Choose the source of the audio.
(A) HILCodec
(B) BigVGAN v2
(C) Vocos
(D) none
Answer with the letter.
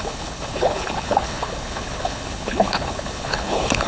A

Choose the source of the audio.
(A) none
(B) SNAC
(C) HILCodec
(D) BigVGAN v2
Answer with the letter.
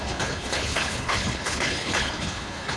C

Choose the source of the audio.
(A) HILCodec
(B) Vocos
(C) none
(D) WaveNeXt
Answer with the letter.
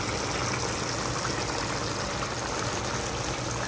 C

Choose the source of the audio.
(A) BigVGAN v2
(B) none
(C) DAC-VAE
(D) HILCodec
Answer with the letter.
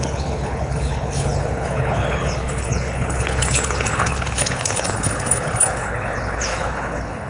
D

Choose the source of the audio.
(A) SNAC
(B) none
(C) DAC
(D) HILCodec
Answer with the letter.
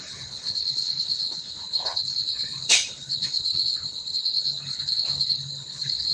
D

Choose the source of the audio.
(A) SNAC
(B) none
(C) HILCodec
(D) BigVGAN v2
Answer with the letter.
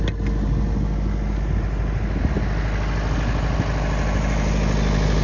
B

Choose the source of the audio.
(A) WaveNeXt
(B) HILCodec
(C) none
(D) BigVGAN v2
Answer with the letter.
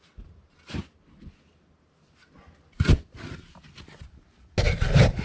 C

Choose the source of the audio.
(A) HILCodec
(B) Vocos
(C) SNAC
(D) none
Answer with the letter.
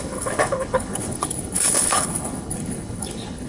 A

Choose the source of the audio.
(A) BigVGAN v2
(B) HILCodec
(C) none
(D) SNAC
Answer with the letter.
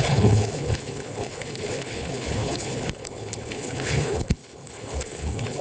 B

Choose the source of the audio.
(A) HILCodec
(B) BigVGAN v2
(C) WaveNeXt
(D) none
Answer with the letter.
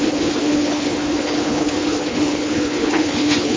A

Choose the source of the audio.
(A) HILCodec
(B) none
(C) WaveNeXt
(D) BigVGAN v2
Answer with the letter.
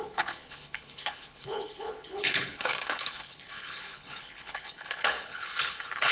A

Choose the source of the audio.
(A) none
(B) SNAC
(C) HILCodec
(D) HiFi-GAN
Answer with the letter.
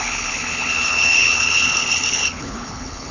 C